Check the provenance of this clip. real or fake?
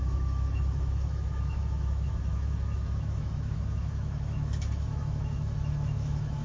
fake